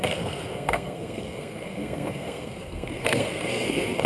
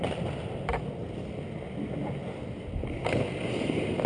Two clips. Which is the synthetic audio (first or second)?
first